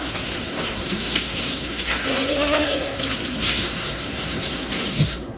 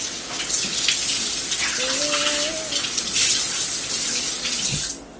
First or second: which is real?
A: second